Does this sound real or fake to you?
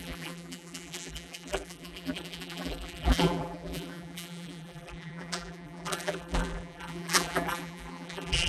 fake